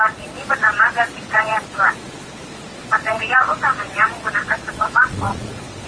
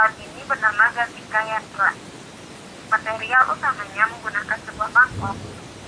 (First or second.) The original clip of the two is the second